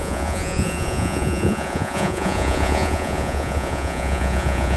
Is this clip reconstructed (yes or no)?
yes